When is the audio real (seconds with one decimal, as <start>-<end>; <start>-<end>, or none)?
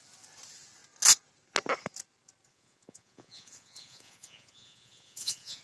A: 0.0-2.5